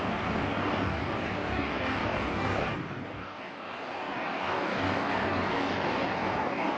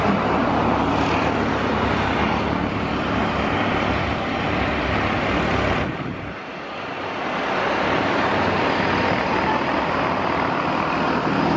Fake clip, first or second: first